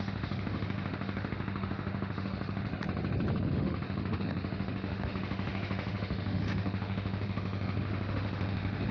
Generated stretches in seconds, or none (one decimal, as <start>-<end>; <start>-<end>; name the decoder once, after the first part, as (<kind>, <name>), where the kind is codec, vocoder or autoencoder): 0.0-2.7 (autoencoder, DAC-VAE); 3.4-8.9